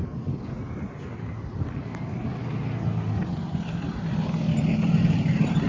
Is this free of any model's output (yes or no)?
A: yes